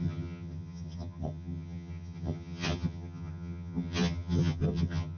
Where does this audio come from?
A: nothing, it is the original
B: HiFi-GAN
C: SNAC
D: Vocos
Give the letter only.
B